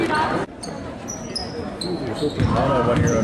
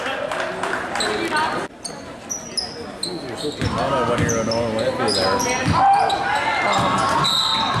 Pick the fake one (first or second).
first